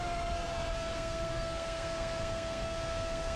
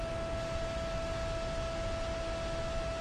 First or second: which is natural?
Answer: second